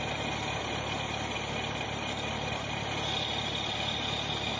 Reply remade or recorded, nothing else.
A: recorded